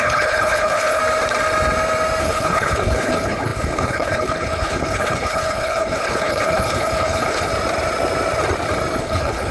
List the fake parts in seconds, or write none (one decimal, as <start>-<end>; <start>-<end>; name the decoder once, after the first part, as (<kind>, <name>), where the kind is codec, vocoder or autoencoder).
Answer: 0.0-1.0 (codec, HILCodec); 2.2-7.5; 9.0-9.5